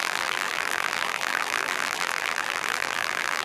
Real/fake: fake